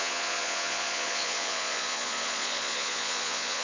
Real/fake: fake